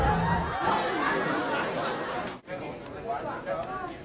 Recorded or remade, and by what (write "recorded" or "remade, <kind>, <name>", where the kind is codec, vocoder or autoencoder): recorded